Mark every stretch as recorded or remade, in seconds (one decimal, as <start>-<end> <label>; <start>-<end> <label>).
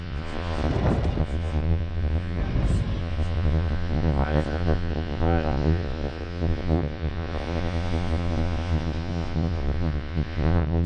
0.0-0.7 remade; 0.7-1.2 recorded; 1.2-2.4 remade; 2.4-3.0 recorded; 3.0-10.9 remade